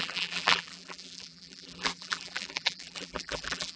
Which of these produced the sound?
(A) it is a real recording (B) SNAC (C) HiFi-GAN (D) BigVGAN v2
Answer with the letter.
D